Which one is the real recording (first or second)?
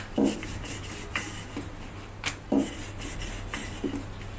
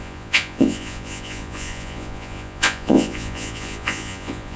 first